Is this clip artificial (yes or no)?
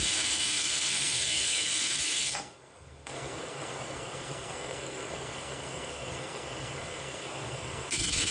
yes